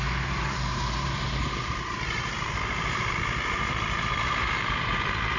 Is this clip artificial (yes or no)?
yes